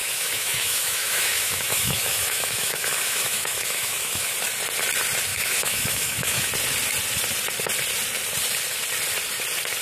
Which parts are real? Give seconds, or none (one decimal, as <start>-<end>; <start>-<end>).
4.3-5.3; 6.5-9.8

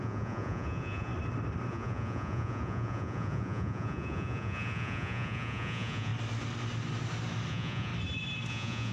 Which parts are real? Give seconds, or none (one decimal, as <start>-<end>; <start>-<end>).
1.1-1.7; 6.1-7.5; 7.9-8.5

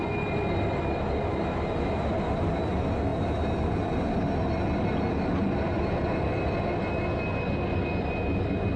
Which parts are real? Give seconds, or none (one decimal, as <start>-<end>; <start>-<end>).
0.0-8.8

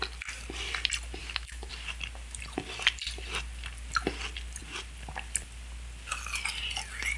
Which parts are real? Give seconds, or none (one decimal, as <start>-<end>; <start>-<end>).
0.0-1.2; 1.7-7.2

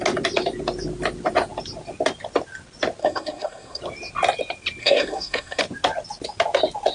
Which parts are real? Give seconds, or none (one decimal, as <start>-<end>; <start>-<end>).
0.0-3.0; 3.8-4.8; 5.6-6.9